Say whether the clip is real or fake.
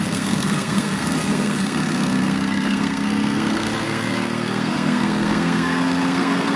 fake